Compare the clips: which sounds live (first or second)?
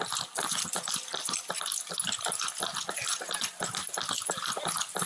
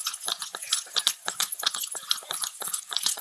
first